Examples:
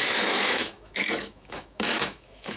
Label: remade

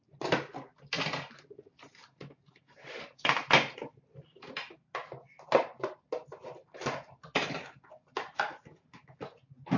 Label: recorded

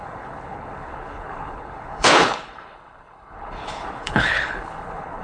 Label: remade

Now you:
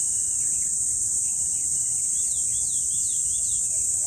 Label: recorded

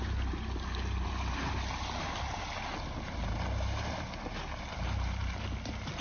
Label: recorded